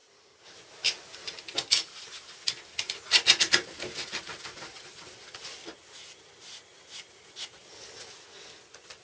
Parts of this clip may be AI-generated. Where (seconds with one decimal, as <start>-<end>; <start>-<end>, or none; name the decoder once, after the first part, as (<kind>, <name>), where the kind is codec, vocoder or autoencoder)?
none